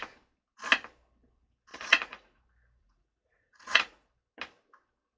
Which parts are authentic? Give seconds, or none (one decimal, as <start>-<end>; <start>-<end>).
0.0-1.7; 2.4-2.8; 4.1-5.2